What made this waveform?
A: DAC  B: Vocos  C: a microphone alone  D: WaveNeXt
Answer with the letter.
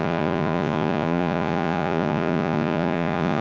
B